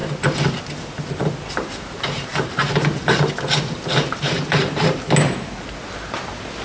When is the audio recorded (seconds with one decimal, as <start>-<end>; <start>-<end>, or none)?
0.0-6.6